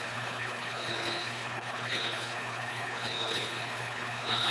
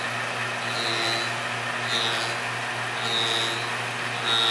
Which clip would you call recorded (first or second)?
second